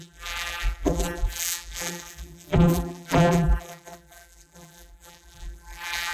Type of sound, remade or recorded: remade